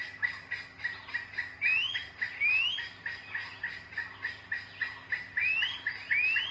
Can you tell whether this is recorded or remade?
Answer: recorded